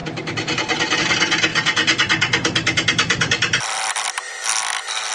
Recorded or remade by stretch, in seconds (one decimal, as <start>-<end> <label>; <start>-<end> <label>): 0.0-5.1 recorded